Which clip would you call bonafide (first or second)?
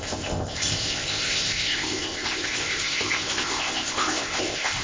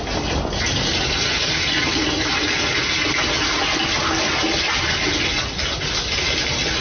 second